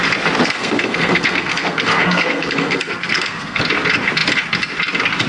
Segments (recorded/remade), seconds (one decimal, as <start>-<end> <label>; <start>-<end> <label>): 0.0-0.4 recorded; 0.4-3.6 remade; 3.6-5.3 recorded